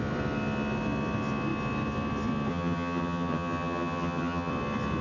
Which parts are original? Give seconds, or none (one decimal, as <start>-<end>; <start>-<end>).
0.0-2.5; 4.5-5.0